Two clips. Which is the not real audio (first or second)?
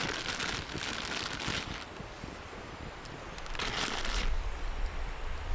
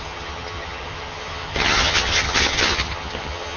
second